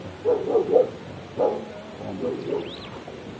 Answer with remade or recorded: recorded